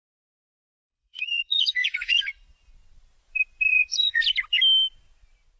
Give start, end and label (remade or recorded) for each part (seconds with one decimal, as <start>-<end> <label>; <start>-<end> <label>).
0.0-0.6 recorded; 0.6-2.7 remade; 2.7-3.7 recorded; 3.7-4.2 remade; 4.2-5.6 recorded